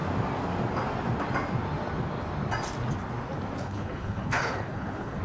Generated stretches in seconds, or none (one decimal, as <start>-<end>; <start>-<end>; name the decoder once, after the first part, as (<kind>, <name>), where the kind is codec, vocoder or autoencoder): 3.6-5.2 (codec, HILCodec)